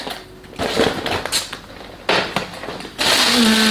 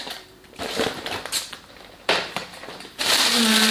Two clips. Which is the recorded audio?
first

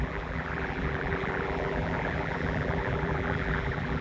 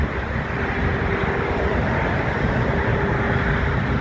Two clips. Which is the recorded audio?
second